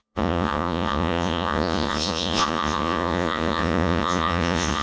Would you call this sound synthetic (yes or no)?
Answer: yes